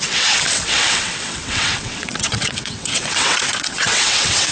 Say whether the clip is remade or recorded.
remade